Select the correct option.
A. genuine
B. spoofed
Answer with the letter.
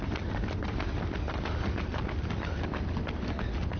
A